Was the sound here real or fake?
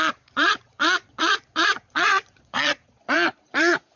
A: fake